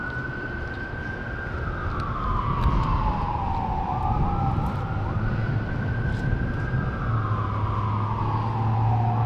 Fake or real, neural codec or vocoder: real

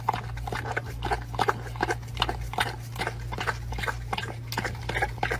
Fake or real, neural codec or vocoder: real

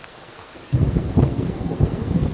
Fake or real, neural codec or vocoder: fake, codec, SNAC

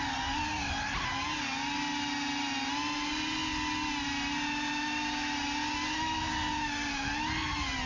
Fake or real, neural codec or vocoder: real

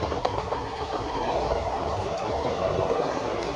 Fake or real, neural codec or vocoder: fake, codec, SNAC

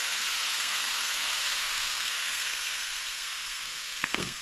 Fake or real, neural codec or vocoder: fake, codec, SNAC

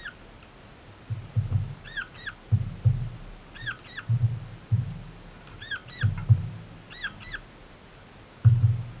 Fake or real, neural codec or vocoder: real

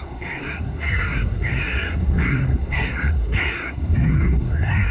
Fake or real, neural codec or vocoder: fake, codec, SNAC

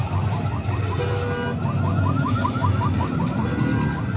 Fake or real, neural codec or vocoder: real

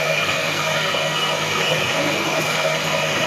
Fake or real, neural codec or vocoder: fake, codec, SNAC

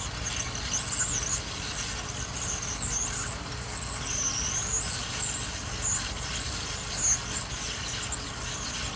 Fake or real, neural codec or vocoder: real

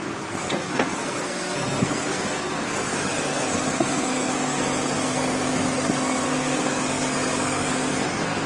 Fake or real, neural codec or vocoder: fake, codec, SNAC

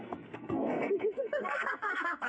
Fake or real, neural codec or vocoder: fake, codec, SNAC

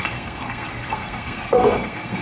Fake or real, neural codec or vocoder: fake, codec, SNAC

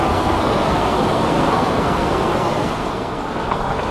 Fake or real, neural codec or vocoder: fake, codec, SNAC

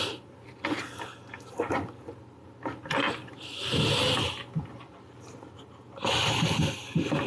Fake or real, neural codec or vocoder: real